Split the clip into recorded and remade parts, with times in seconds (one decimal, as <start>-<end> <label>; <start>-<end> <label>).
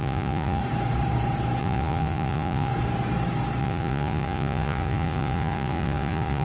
0.0-0.6 remade; 0.6-1.6 recorded; 1.6-2.7 remade; 2.7-3.6 recorded; 3.6-6.4 remade